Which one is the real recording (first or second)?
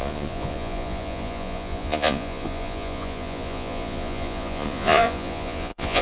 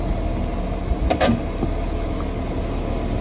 second